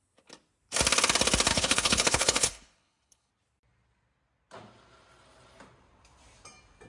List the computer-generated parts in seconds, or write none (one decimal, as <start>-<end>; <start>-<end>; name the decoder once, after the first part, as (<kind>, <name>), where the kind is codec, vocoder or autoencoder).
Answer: 1.5-3.3 (codec, HILCodec)